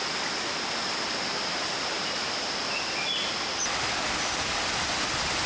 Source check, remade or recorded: remade